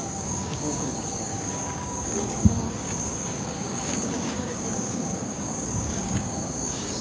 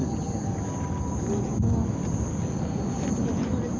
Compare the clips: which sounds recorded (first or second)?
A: second